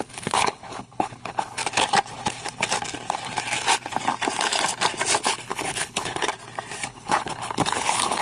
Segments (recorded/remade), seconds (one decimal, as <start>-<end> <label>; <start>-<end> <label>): 0.0-1.6 remade; 1.6-5.2 recorded; 5.2-6.3 remade; 6.3-6.9 recorded; 6.9-8.2 remade

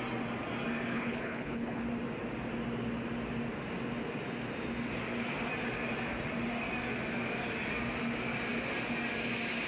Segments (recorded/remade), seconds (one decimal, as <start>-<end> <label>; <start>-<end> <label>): 0.0-0.9 recorded; 0.9-1.8 remade; 1.8-9.7 recorded

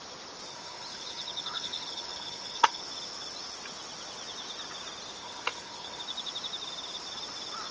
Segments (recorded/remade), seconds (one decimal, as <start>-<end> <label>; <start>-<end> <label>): 0.0-0.5 recorded; 0.5-2.8 remade; 2.8-5.2 recorded; 5.2-6.0 remade; 6.0-7.7 recorded

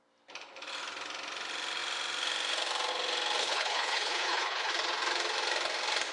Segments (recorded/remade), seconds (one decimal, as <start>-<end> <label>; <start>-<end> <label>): 0.0-3.4 recorded; 3.4-4.7 remade; 4.7-6.1 recorded

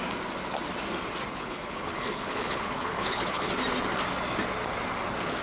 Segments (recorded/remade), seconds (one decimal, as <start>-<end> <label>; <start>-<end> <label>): 0.0-1.3 recorded; 1.3-3.5 remade; 3.5-5.4 recorded